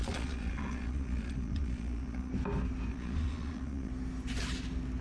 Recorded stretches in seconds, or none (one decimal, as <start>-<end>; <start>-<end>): 2.3-2.9; 3.9-5.0